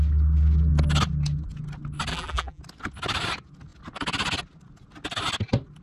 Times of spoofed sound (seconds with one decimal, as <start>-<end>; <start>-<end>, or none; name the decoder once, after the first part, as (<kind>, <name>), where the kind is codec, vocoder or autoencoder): 2.1-2.6 (vocoder, BigVGAN v2)